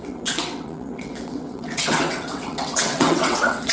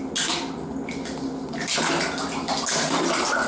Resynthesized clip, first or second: first